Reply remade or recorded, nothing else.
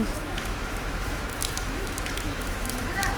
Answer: remade